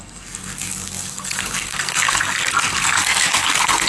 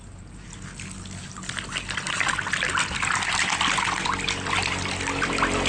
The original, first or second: second